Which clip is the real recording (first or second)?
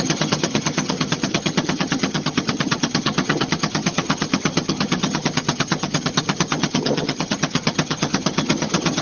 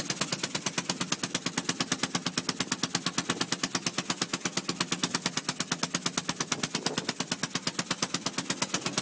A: second